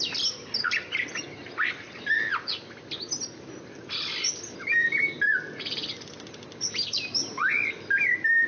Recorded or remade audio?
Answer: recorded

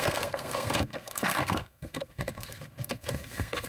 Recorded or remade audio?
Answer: remade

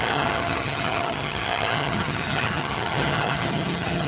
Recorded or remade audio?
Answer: remade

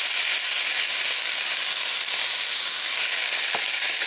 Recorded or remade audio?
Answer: recorded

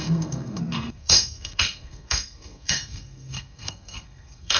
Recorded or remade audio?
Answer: remade